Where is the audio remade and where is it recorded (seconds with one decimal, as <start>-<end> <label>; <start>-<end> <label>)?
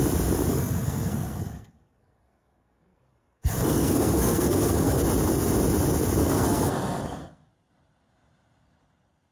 0.0-0.5 recorded; 0.5-5.0 remade; 5.0-6.2 recorded; 6.2-7.5 remade; 7.5-9.3 recorded